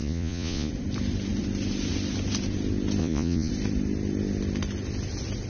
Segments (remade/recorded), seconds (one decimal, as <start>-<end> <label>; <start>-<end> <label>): 0.0-0.7 remade; 0.7-3.0 recorded; 3.0-3.5 remade; 3.5-5.5 recorded

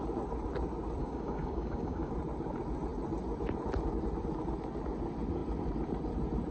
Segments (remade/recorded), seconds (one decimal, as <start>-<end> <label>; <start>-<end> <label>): 0.0-1.0 recorded; 1.0-2.1 remade; 2.1-6.5 recorded

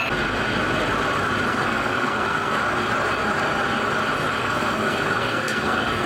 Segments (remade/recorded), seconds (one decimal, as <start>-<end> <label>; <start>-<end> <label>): 0.0-1.5 recorded; 1.5-2.6 remade; 2.6-4.4 recorded; 4.4-6.1 remade

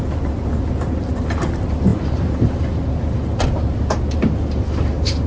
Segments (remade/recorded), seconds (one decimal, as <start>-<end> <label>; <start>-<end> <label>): 0.0-5.3 recorded